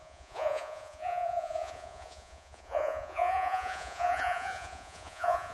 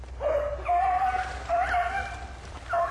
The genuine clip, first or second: second